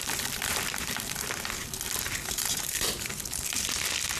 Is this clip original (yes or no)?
no